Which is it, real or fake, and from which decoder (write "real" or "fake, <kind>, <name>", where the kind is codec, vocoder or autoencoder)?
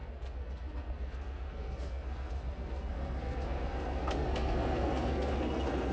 fake, codec, SNAC